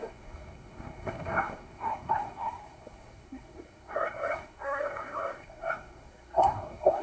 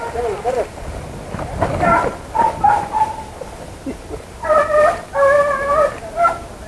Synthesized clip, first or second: first